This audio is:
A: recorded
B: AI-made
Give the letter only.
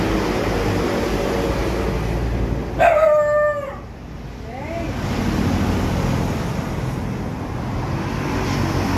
A